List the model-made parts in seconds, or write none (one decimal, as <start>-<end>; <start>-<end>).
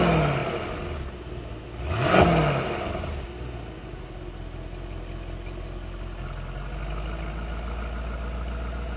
none